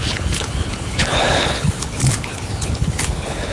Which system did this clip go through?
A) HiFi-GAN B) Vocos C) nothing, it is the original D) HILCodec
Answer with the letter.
D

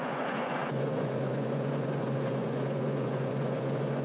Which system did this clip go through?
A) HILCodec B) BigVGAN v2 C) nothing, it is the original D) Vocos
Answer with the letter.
D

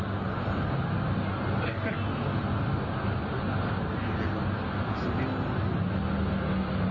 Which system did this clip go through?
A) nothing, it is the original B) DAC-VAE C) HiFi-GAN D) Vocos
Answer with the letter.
A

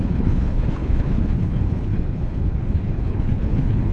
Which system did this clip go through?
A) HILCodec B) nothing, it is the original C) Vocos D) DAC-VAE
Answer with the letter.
A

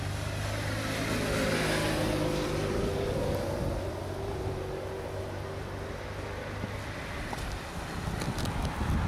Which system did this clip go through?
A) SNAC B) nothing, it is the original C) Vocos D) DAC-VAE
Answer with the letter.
B